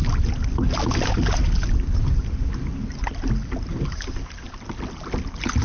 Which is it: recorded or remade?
recorded